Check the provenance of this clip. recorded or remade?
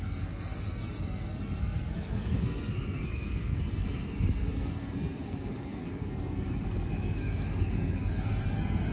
remade